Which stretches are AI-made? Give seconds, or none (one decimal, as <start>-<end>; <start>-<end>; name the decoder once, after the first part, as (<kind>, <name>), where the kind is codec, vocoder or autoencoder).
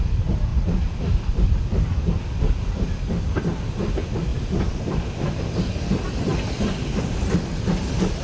0.5-3.0 (vocoder, BigVGAN v2); 4.3-5.2